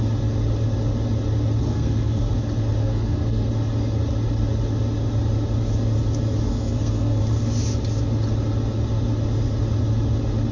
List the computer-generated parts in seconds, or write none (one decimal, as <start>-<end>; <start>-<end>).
1.6-2.3; 2.8-3.5; 6.5-7.2